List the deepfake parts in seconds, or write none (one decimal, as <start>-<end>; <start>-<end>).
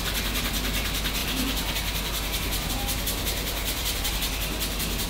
3.6-4.1